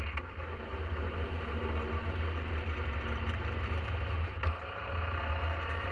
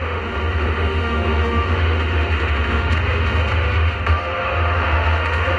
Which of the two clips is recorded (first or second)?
first